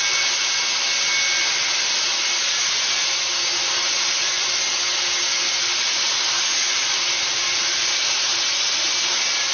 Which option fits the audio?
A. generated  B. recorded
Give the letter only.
B